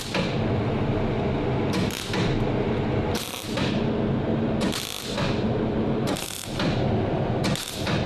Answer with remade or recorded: recorded